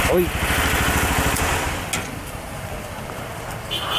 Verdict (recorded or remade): recorded